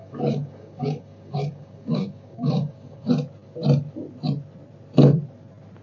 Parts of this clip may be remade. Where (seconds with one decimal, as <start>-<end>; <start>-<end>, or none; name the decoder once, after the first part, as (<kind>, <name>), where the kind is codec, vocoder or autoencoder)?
0.0-3.1 (codec, DAC)